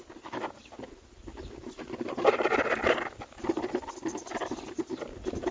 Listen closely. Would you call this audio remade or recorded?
recorded